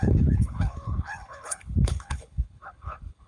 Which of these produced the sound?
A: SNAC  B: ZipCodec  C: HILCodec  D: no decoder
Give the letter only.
C